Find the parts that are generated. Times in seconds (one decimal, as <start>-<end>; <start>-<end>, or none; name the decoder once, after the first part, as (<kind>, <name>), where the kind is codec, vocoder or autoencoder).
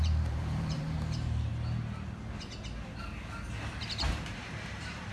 0.0-1.5 (vocoder, BigVGAN v2); 4.1-5.1